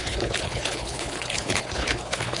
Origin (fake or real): fake